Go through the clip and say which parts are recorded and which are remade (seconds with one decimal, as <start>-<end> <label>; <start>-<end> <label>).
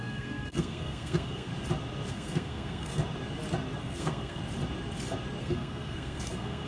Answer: 0.0-1.5 remade; 1.5-2.1 recorded; 2.1-3.0 remade; 3.0-3.8 recorded; 3.8-4.4 remade; 4.4-5.4 recorded; 5.4-6.7 remade